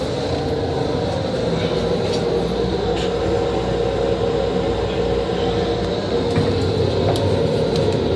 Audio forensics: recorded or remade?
recorded